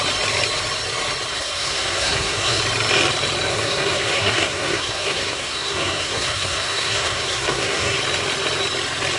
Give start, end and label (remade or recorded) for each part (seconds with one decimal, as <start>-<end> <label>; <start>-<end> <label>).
0.0-1.3 recorded; 1.3-2.6 remade; 2.6-3.5 recorded; 3.5-8.0 remade; 8.0-9.2 recorded

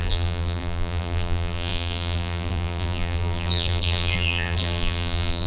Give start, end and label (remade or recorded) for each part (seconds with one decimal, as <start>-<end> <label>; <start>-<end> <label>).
0.0-5.5 remade

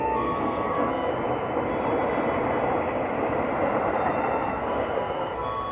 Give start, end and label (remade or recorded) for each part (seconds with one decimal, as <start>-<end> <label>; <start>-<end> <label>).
0.0-1.1 remade; 1.1-4.5 recorded; 4.5-5.7 remade

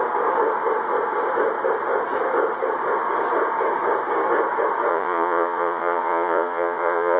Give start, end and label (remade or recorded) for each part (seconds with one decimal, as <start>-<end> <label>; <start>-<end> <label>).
0.0-4.9 recorded; 4.9-7.2 remade

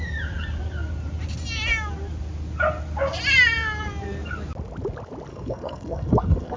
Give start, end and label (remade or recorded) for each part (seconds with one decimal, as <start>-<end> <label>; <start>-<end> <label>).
0.0-5.3 recorded; 5.3-6.6 remade

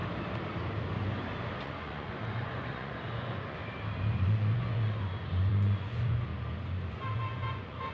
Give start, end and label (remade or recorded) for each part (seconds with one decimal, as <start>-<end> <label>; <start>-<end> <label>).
0.0-1.6 recorded; 1.6-3.6 remade; 3.6-4.2 recorded; 4.2-6.3 remade; 6.3-6.9 recorded; 6.9-7.9 remade